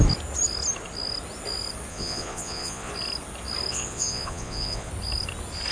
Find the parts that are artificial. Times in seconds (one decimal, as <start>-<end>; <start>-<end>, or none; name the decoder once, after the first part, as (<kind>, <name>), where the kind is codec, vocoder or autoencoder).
1.9-2.9 (vocoder, Vocos); 3.7-4.9